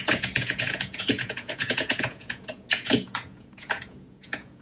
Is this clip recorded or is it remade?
remade